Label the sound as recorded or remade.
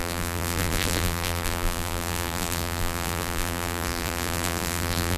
remade